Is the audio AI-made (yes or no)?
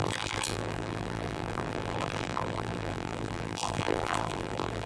yes